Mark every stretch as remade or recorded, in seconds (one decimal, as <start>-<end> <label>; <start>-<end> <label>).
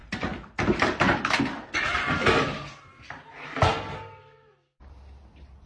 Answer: 0.0-5.7 recorded